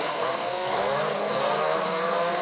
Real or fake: fake